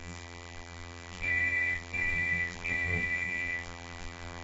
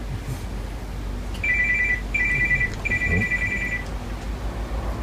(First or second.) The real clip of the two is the second